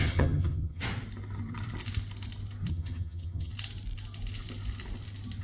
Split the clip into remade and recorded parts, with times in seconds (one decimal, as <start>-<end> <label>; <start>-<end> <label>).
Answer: 0.0-0.8 remade; 0.8-2.7 recorded; 2.7-3.5 remade; 3.5-5.4 recorded